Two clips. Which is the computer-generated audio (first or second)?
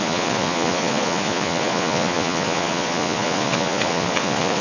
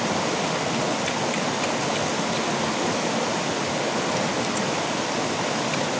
first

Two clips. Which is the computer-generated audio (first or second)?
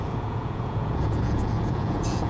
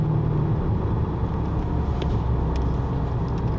first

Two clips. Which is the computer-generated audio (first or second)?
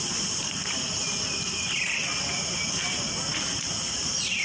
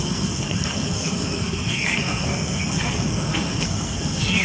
second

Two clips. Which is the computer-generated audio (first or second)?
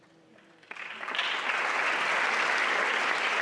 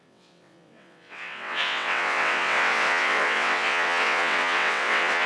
second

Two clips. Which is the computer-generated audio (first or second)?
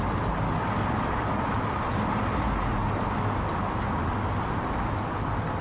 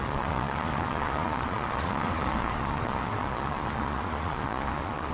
second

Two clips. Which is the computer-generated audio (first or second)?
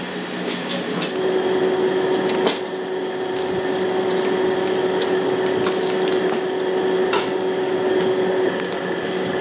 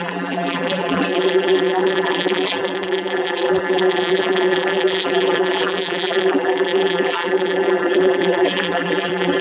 second